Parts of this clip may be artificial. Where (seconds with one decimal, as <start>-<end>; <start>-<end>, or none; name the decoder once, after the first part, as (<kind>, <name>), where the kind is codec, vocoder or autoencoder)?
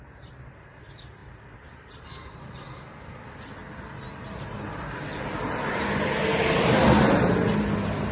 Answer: none